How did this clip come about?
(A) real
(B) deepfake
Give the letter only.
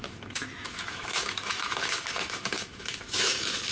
B